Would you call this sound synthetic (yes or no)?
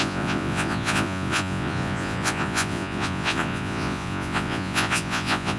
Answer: yes